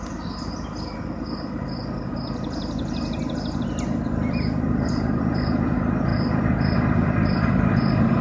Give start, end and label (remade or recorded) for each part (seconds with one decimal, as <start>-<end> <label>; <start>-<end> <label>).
0.0-8.2 recorded